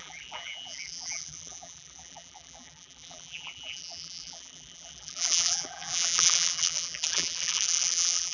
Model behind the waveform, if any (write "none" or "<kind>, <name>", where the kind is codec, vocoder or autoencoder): vocoder, BigVGAN v2